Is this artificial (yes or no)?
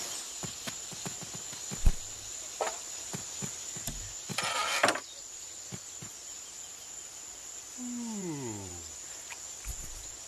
no